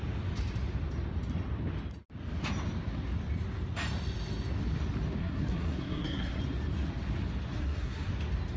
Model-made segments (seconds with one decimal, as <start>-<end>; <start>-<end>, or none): 5.2-6.4; 7.5-8.1